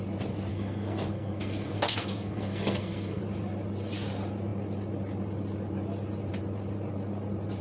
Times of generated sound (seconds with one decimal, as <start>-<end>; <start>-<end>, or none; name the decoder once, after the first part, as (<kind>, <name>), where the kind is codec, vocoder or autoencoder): 0.5-3.2 (codec, SNAC)